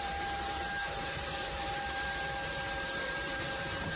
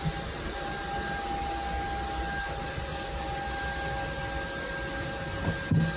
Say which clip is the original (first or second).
second